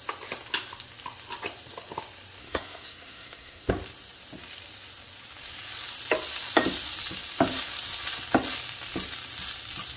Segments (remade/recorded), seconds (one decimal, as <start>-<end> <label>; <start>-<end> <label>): 0.0-2.4 recorded; 2.4-3.7 remade; 3.7-10.0 recorded